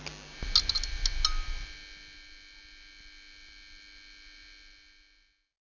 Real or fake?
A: real